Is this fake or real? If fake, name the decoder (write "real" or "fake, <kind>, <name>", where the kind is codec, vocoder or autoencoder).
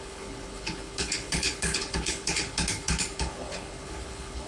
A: fake, codec, HILCodec